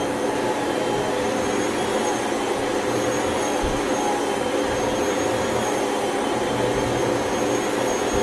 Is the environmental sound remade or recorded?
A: recorded